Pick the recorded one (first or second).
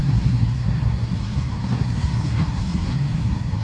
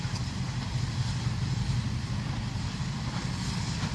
second